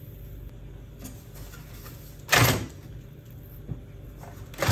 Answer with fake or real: real